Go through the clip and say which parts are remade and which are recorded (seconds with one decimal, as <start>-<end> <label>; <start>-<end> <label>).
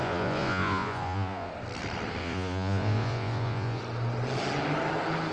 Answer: 0.0-1.5 remade; 1.5-2.2 recorded; 2.2-3.8 remade; 3.8-5.3 recorded